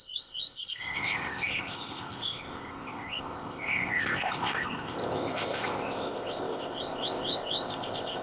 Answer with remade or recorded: remade